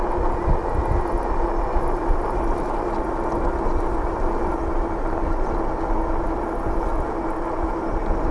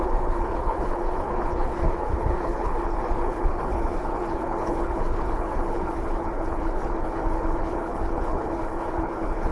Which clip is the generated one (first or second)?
second